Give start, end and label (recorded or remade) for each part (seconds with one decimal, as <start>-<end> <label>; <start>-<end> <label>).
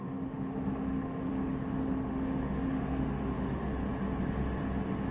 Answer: 0.0-1.3 remade; 1.3-2.1 recorded; 2.1-3.7 remade; 3.7-5.1 recorded